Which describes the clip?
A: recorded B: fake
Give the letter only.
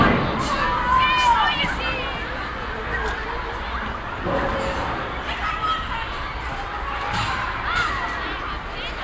A